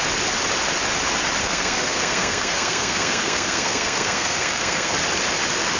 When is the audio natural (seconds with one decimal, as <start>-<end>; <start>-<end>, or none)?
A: 0.0-1.4; 4.9-5.8